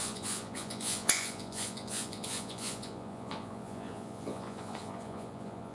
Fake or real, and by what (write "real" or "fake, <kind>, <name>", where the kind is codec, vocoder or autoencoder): fake, vocoder, Vocos